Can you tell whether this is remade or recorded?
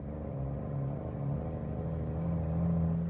recorded